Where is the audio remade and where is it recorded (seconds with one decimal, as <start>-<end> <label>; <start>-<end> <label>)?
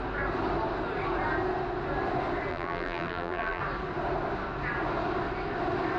0.0-2.5 recorded; 2.5-3.6 remade; 3.6-6.0 recorded